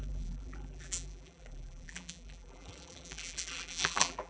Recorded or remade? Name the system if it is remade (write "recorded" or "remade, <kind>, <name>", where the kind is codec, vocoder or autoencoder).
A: remade, vocoder, BigVGAN v2